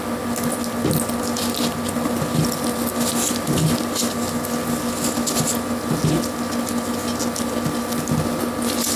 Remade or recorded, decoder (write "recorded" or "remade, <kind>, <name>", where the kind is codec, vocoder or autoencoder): recorded